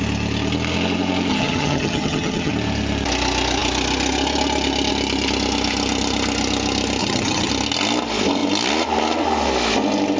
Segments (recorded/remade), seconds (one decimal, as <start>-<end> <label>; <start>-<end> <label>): 0.0-1.3 recorded; 1.3-2.5 remade; 2.5-7.0 recorded; 7.0-7.5 remade; 7.5-10.2 recorded

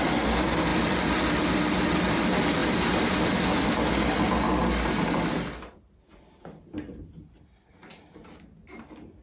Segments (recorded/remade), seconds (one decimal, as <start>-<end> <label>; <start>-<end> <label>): 0.0-9.2 recorded

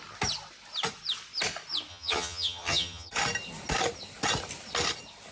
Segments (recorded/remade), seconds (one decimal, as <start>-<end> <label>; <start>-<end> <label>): 0.0-1.9 recorded; 1.9-3.1 remade; 3.1-5.3 recorded

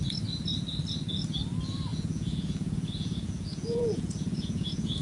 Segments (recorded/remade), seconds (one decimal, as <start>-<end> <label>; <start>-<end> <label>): 0.0-1.9 recorded; 1.9-5.0 remade

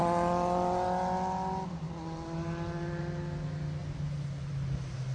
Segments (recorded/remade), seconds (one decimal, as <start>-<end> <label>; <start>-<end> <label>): 0.0-5.1 recorded

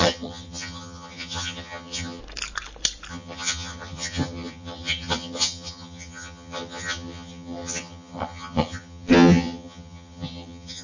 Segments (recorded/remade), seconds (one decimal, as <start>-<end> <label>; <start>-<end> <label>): 0.0-2.2 remade; 2.2-3.1 recorded; 3.1-10.8 remade

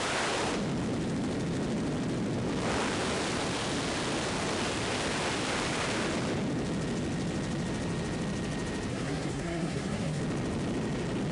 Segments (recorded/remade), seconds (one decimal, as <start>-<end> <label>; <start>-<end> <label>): 0.0-8.9 recorded; 8.9-10.2 remade; 10.2-11.3 recorded